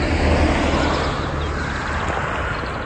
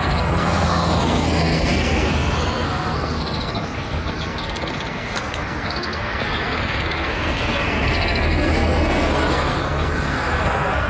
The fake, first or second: second